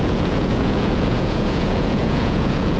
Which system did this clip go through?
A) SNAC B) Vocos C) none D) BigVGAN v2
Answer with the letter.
B